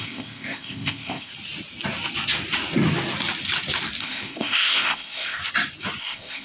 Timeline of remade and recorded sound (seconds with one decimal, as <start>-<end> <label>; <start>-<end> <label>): 0.0-1.3 remade; 1.3-4.0 recorded; 4.0-5.4 remade; 5.4-6.0 recorded; 6.0-6.4 remade